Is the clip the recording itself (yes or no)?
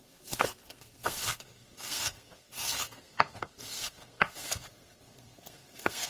no